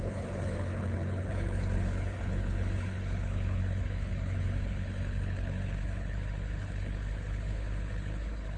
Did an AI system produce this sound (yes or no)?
yes